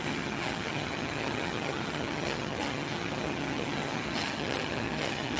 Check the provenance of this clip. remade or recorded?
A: remade